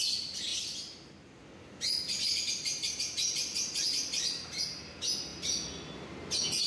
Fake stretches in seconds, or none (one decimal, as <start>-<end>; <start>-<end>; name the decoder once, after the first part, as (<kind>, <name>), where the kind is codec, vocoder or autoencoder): none